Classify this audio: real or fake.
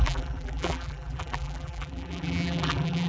fake